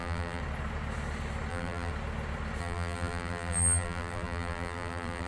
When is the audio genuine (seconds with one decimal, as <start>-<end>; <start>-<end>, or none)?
0.4-1.5; 1.9-2.6